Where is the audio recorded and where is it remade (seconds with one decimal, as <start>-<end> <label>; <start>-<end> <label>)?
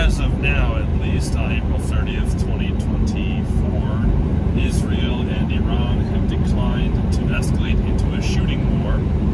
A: 0.0-0.9 recorded; 0.9-1.5 remade; 1.5-2.1 recorded; 2.1-2.7 remade; 2.7-4.3 recorded; 4.3-8.3 remade; 8.3-9.3 recorded